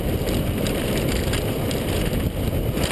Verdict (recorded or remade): recorded